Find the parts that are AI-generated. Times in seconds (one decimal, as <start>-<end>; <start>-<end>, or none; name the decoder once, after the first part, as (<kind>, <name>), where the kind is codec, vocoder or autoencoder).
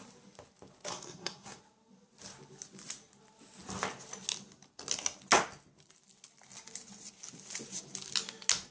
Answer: 0.9-1.6 (codec, SNAC)